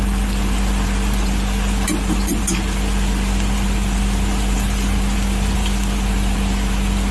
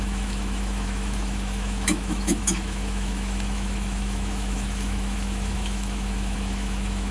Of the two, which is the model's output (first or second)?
second